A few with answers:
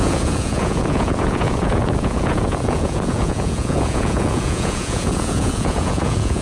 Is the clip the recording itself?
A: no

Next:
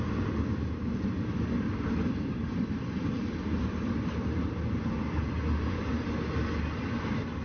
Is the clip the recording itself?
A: no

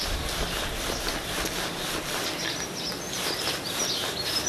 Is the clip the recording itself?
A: yes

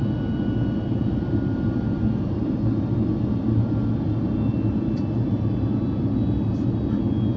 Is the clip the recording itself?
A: yes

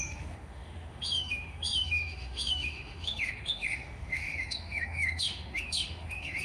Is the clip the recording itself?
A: no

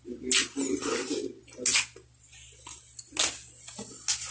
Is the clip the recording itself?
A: yes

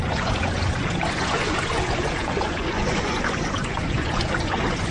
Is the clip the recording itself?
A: no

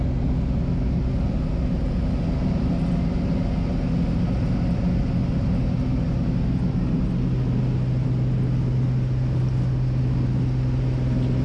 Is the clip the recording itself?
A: yes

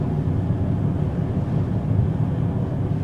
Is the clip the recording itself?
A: yes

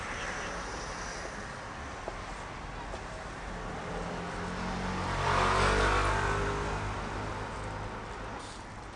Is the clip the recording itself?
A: yes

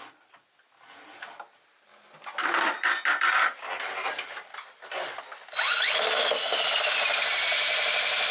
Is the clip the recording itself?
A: yes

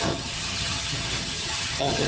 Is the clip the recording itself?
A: no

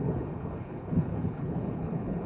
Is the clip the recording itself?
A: no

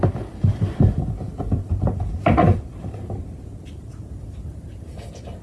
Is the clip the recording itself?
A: yes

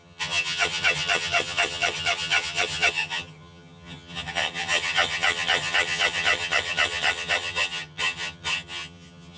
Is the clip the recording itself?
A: no